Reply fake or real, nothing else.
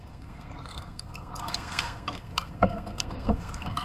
fake